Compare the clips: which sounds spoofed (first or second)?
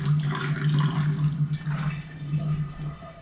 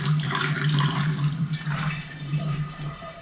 second